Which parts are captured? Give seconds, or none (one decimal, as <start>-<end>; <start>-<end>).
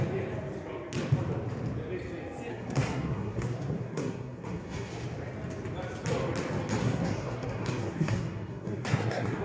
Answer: 0.0-2.5; 4.9-6.8